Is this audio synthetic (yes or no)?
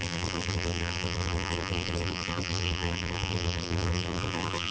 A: yes